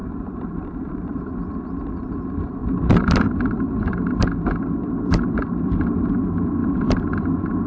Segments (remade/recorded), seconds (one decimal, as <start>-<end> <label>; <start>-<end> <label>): 0.0-1.3 remade; 1.3-2.6 recorded; 2.6-3.1 remade; 3.1-7.7 recorded